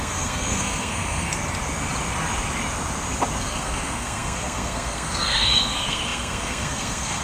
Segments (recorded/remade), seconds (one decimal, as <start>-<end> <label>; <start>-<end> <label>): 0.0-1.3 remade; 1.3-3.4 recorded; 3.4-7.2 remade